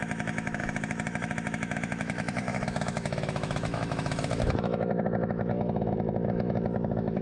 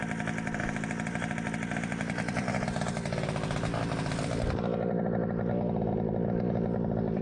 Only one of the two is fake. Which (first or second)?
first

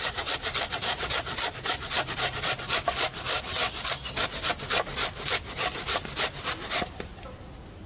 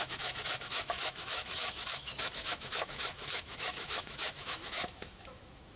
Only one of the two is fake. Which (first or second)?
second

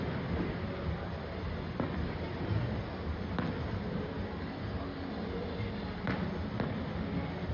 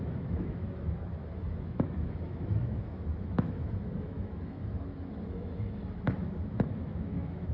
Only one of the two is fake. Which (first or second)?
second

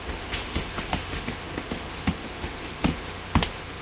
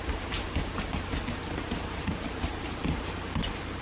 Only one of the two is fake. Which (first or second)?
first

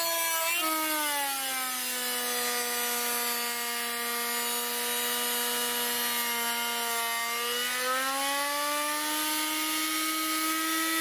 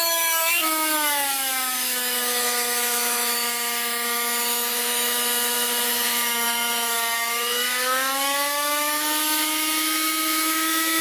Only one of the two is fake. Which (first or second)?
second